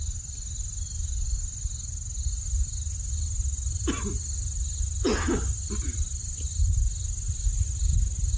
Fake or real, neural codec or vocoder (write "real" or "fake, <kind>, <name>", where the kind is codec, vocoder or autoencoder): real